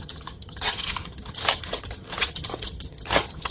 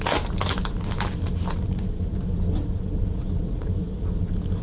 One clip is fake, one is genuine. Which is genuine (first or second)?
second